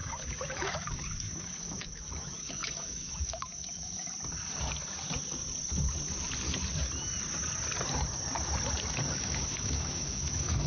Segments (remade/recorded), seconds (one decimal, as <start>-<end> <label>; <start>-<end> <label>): 0.0-4.1 remade; 4.1-9.1 recorded; 9.1-10.7 remade